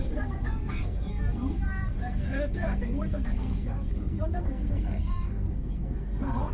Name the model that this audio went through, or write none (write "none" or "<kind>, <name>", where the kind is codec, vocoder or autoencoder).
codec, SNAC